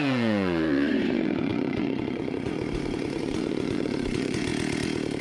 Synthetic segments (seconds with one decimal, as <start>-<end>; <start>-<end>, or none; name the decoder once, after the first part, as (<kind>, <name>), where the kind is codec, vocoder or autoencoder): 0.0-4.5 (vocoder, Vocos)